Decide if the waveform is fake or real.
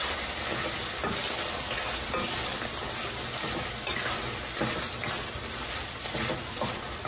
real